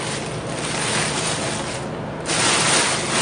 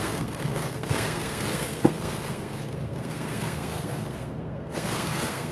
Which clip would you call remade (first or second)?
second